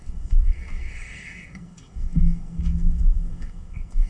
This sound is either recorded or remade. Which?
remade